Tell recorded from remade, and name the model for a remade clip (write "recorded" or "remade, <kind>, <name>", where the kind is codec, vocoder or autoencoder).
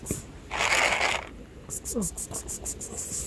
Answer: recorded